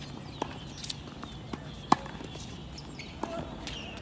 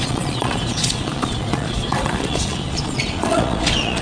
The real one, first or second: first